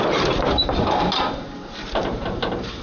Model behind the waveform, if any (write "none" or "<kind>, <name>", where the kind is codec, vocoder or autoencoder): vocoder, BigVGAN v2